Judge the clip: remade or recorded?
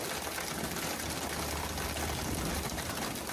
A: recorded